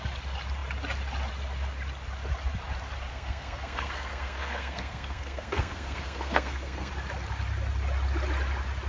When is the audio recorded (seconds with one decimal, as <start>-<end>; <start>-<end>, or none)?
0.0-3.1; 6.9-8.9